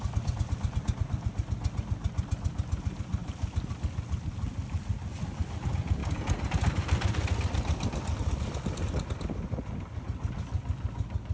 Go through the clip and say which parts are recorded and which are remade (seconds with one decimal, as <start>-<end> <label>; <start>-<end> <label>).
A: 0.0-11.3 recorded